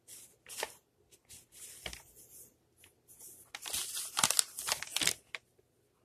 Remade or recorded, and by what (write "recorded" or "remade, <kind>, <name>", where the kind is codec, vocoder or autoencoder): recorded